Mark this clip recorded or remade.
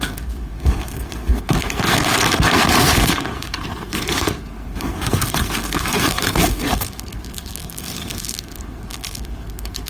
remade